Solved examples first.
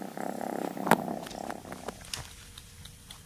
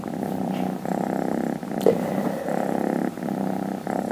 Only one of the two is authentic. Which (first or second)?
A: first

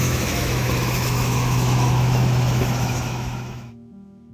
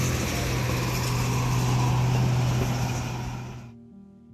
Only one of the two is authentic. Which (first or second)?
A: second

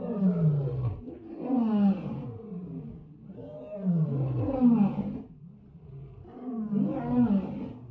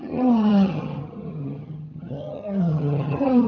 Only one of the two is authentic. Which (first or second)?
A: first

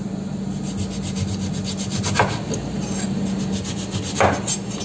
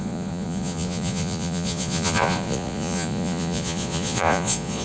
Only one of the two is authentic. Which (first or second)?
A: first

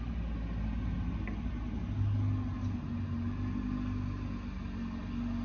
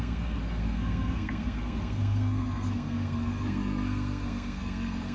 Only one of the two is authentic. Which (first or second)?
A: first